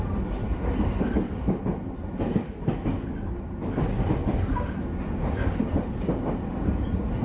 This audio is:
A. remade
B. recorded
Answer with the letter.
B